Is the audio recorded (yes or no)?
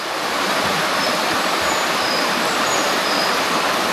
no